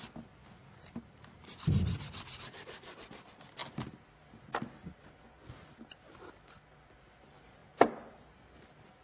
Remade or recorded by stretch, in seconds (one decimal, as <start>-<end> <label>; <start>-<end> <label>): 0.0-9.0 recorded